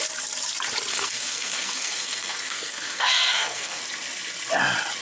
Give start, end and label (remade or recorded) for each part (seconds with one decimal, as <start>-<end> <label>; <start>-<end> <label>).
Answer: 0.0-0.9 recorded; 0.9-3.8 remade; 3.8-5.0 recorded